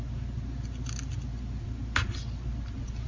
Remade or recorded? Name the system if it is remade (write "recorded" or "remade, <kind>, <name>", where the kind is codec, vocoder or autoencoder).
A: recorded